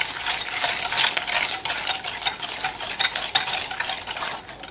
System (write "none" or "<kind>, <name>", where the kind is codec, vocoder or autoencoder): none